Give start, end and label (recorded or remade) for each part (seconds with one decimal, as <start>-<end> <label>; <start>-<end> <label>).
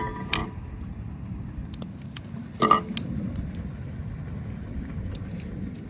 0.0-5.9 recorded